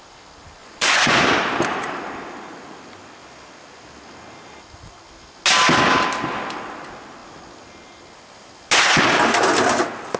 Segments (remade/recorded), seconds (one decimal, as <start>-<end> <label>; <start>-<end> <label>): 0.0-0.6 recorded; 0.6-1.2 remade; 1.2-10.2 recorded